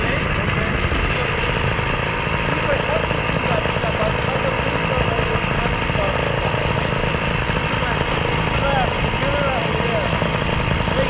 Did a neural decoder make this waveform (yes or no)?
no